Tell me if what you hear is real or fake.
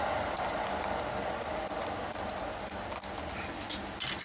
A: real